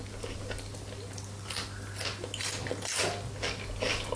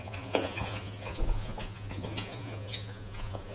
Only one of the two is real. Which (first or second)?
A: first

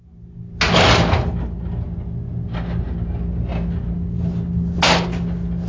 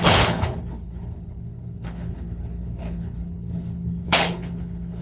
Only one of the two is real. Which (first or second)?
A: first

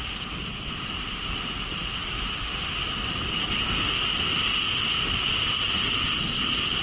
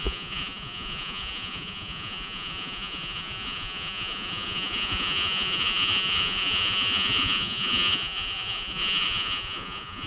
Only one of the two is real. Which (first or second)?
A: first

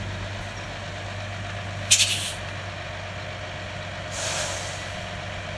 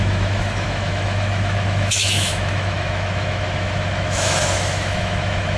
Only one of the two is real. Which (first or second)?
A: first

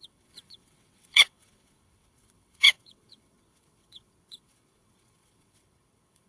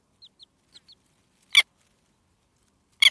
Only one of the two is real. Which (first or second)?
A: second